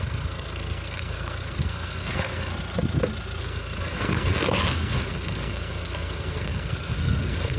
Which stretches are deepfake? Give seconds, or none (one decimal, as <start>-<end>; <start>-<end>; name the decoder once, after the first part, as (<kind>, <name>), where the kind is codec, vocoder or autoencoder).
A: 0.0-2.5 (codec, SNAC); 3.4-7.6